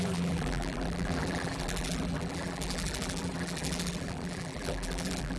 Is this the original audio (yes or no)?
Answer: no